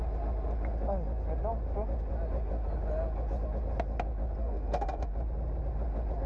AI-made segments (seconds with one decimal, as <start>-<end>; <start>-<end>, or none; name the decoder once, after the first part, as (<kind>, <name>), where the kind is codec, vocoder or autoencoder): 4.4-5.1 (codec, SNAC)